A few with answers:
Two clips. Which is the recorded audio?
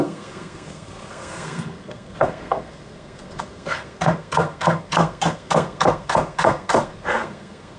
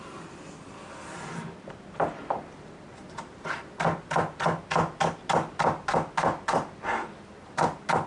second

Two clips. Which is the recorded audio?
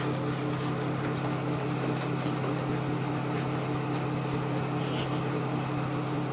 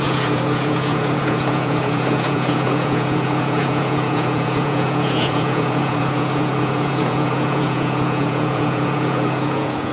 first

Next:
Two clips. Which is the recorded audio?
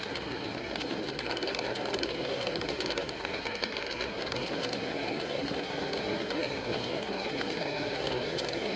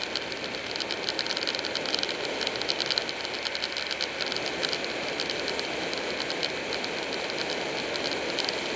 second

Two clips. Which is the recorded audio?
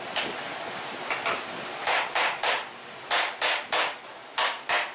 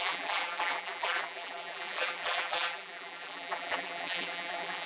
first